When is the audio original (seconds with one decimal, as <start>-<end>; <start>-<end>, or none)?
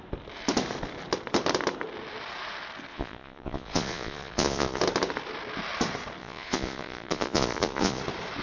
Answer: 0.0-2.9; 4.8-6.2; 8.0-8.4